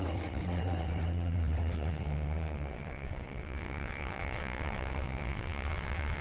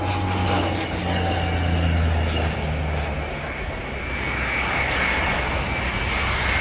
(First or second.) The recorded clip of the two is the second